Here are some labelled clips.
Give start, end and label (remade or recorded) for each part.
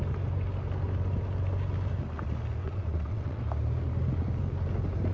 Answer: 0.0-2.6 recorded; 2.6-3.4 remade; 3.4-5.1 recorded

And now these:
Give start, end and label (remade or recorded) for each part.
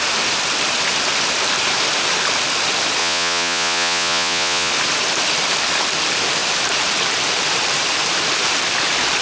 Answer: 0.0-3.0 recorded; 3.0-4.7 remade; 4.7-9.2 recorded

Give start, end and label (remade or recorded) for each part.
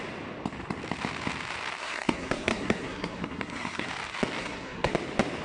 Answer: 0.0-1.8 recorded; 1.8-3.9 remade; 3.9-4.4 recorded; 4.4-4.9 remade; 4.9-5.4 recorded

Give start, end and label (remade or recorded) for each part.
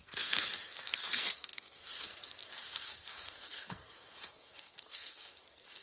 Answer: 0.0-5.8 remade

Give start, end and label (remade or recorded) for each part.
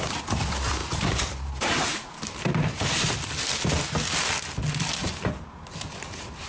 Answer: 0.0-0.8 recorded; 0.8-3.1 remade; 3.1-5.0 recorded; 5.0-6.5 remade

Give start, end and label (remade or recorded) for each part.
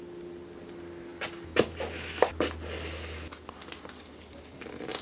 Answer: 0.0-5.0 recorded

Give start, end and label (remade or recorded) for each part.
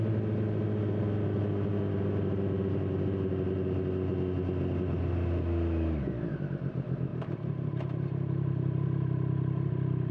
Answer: 0.0-7.1 recorded; 7.1-9.7 remade; 9.7-10.1 recorded